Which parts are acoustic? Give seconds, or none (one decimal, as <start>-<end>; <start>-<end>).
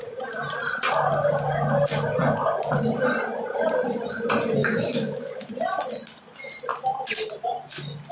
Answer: 0.0-4.6; 5.5-8.1